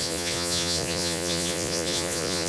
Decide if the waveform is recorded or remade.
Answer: remade